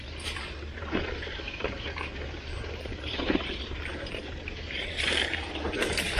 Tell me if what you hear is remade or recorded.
remade